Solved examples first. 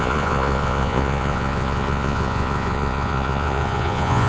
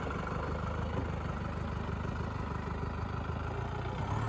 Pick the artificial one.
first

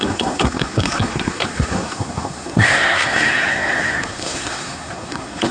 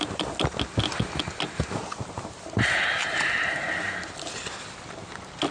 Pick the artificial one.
first